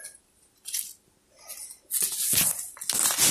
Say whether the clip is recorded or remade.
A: recorded